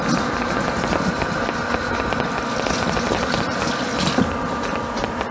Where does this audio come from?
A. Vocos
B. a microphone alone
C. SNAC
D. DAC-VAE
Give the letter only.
B